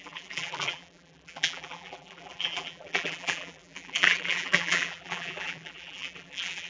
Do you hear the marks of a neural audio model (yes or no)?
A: yes